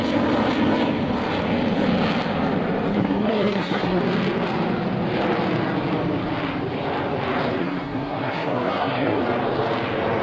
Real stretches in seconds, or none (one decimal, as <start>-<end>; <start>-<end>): 0.0-2.9; 4.0-7.6; 9.2-10.2